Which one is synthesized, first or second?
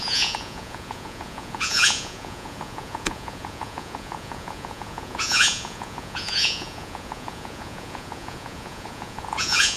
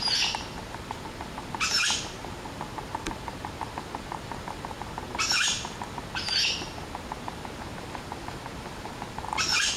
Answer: first